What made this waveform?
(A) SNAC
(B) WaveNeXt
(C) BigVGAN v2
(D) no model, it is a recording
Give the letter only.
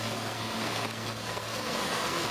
A